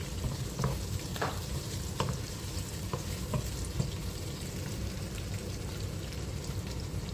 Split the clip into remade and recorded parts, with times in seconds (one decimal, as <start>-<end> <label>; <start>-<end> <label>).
0.0-1.1 recorded; 1.1-3.3 remade; 3.3-4.0 recorded; 4.0-7.1 remade